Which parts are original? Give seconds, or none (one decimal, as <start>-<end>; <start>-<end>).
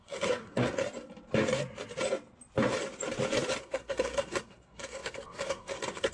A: 0.8-3.6